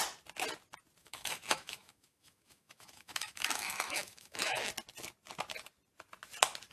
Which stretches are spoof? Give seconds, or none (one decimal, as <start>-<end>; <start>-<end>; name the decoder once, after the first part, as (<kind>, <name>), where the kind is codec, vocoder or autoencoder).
1.0-4.7 (autoencoder, DAC-VAE)